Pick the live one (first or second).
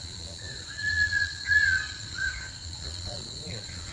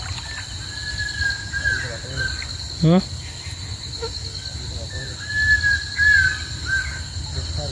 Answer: second